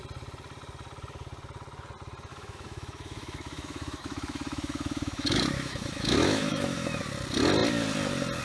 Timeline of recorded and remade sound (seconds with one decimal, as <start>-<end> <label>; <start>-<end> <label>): 0.0-2.3 recorded; 2.3-7.0 remade; 7.0-8.4 recorded